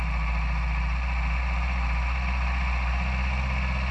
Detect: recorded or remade recorded